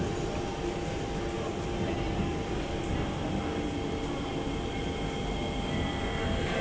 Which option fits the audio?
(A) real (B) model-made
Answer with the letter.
A